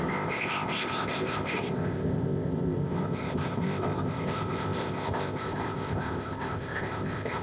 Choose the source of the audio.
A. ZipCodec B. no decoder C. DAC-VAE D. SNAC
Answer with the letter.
A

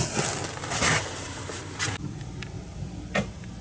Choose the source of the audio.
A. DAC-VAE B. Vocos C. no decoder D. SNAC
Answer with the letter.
C